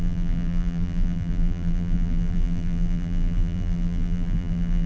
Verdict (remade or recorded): remade